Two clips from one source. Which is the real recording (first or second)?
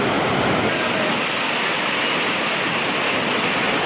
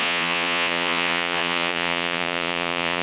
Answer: first